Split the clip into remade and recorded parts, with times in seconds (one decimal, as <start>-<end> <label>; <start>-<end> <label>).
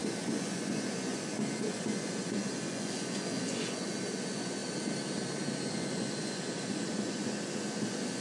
0.0-4.6 remade; 4.6-5.7 recorded; 5.7-8.2 remade